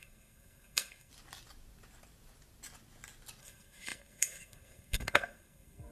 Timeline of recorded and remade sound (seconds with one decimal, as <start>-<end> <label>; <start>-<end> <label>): 0.0-1.1 remade; 1.1-3.4 recorded; 3.4-5.9 remade